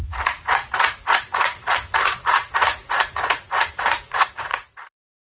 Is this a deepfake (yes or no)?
yes